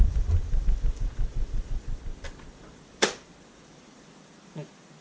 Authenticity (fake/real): fake